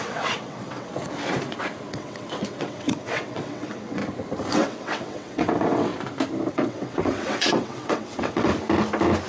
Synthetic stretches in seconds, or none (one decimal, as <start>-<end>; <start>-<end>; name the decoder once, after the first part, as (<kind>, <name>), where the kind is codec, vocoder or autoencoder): 0.0-0.9 (vocoder, WaveNeXt); 1.9-4.0; 4.5-5.9; 6.5-8.5